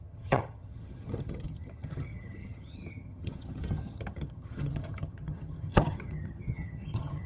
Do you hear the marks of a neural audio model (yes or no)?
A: yes